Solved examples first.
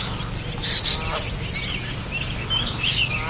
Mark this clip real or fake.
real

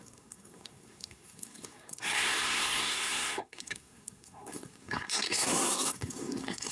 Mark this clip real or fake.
fake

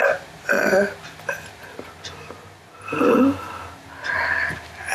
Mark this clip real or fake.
real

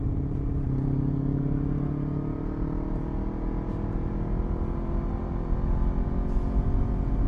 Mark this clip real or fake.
real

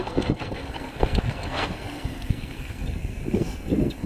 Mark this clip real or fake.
fake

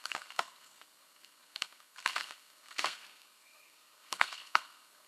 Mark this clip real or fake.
fake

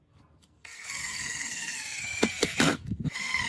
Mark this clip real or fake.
fake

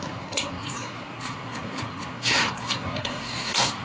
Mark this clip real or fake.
fake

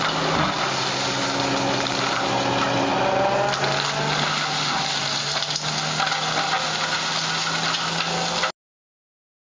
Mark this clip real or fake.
real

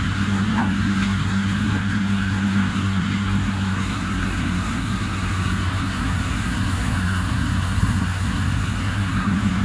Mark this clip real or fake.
fake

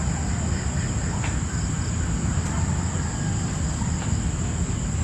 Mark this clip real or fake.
real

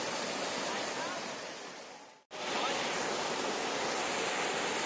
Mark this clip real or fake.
real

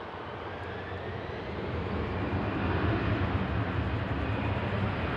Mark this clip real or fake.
real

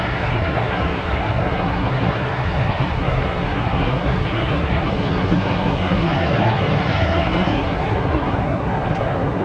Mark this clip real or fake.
fake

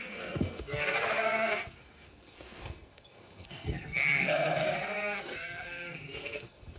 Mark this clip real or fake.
fake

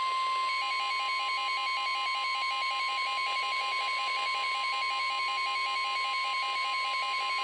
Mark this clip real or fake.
real